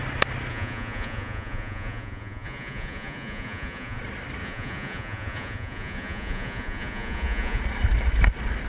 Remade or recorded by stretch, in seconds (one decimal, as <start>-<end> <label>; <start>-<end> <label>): 0.0-0.5 recorded; 0.5-4.0 remade; 4.0-4.4 recorded; 4.4-7.6 remade; 7.6-8.7 recorded